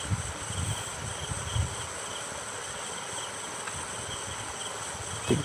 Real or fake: real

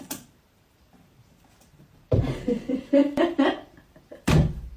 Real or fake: fake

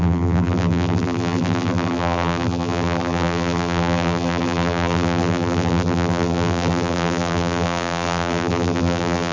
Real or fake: fake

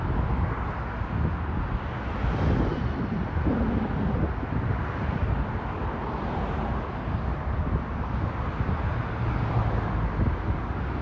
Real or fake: real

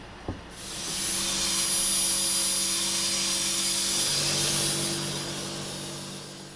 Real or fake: real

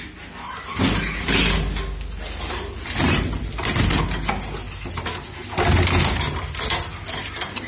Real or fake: real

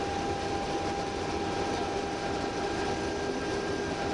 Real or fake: real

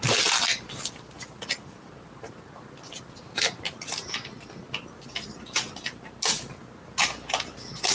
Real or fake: real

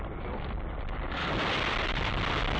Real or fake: real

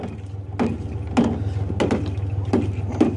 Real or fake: real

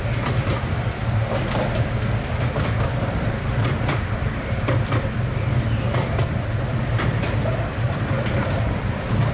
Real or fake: fake